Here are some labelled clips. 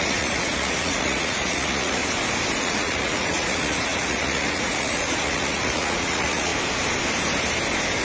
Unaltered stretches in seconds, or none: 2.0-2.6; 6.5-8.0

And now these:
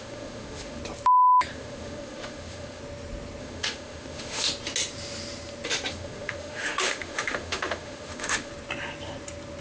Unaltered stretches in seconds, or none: 0.8-1.5; 2.8-3.4; 4.5-5.9; 8.5-9.6

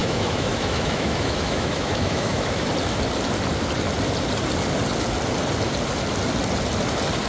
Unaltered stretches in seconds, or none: 2.7-7.3

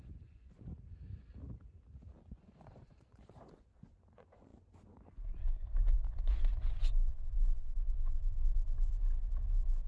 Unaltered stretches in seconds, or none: 0.7-2.2; 8.9-9.9

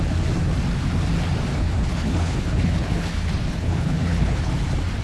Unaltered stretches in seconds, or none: 0.0-1.5; 4.5-5.0

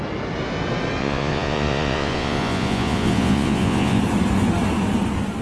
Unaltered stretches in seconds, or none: 0.0-1.0; 4.0-5.4

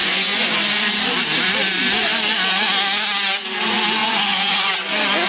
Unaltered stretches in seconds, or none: 0.5-4.0; 4.7-5.3

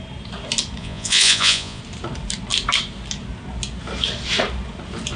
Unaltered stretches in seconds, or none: 0.0-0.8; 1.8-5.2